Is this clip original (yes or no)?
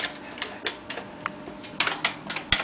yes